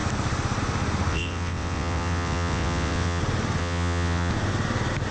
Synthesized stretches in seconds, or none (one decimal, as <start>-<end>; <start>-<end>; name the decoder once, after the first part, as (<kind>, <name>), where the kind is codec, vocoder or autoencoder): 1.1-3.2 (vocoder, WaveNeXt); 3.6-4.3